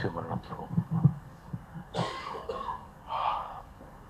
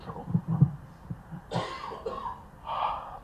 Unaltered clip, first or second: second